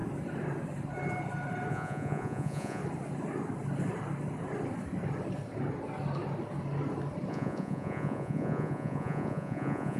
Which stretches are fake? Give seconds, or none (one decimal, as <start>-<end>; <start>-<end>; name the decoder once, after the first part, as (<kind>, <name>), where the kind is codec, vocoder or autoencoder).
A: 1.7-2.8 (vocoder, Vocos); 7.3-10.0